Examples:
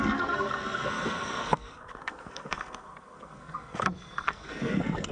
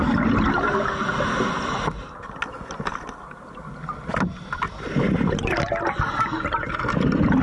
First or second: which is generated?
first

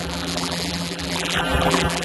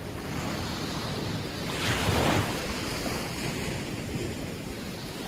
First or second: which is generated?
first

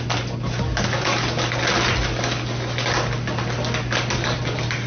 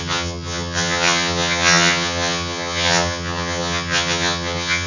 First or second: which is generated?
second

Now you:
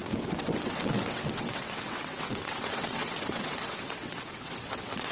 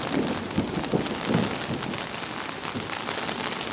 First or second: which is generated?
first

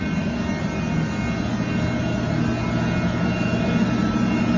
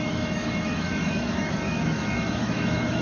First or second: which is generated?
second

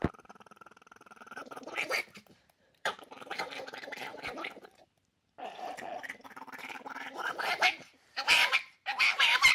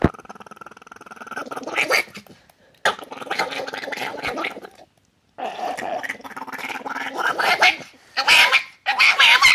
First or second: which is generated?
first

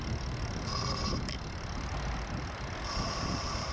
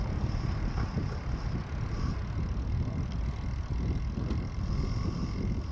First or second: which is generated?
first